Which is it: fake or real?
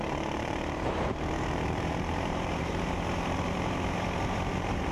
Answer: fake